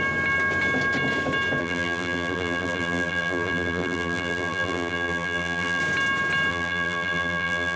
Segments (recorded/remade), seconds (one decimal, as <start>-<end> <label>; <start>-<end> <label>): 0.0-1.6 recorded; 1.6-5.8 remade; 5.8-6.5 recorded; 6.5-7.8 remade